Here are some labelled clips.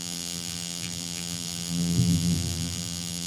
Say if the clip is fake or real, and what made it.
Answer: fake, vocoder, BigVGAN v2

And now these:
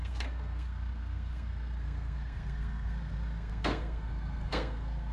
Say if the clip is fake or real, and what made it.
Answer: fake, codec, SNAC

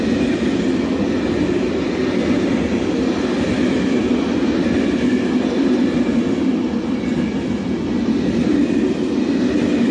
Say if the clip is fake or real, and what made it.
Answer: real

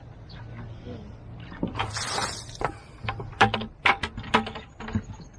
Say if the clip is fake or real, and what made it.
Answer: real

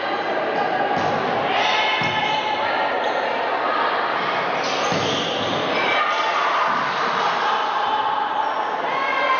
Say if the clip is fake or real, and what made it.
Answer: real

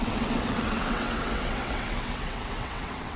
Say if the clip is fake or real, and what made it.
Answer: fake, vocoder, WaveNeXt